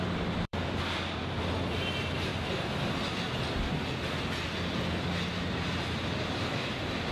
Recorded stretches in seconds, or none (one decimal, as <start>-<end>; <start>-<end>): 2.3-6.6